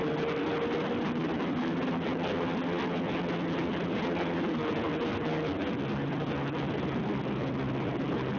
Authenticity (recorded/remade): recorded